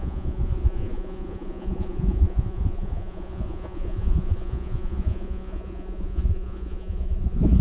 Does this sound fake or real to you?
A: fake